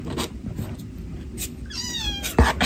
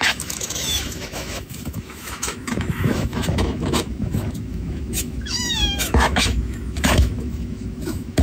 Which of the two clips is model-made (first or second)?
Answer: second